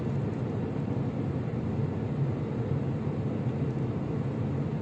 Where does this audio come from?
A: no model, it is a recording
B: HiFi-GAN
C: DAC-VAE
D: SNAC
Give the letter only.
A